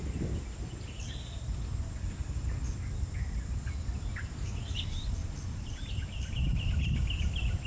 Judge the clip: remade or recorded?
recorded